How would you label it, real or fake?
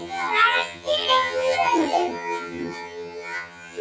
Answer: fake